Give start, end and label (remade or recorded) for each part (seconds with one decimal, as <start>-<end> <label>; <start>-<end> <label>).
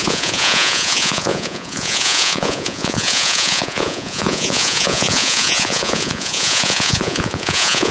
0.0-7.9 remade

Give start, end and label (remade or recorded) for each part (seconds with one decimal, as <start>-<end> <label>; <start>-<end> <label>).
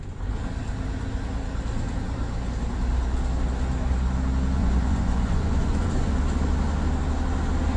0.0-4.6 recorded; 4.6-6.2 remade; 6.2-7.8 recorded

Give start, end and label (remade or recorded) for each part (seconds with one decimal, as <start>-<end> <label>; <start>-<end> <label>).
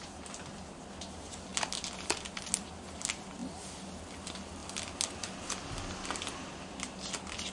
0.0-7.5 recorded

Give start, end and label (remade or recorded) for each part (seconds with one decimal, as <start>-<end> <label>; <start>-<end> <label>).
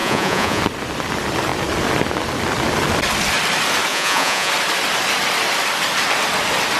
0.0-0.6 remade; 0.6-3.9 recorded; 3.9-4.5 remade; 4.5-6.8 recorded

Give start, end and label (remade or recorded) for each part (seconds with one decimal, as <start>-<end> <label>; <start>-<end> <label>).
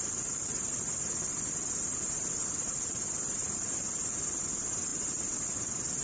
0.0-6.0 recorded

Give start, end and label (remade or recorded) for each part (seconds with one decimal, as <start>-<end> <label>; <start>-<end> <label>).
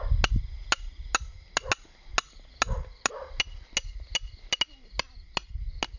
0.0-6.0 recorded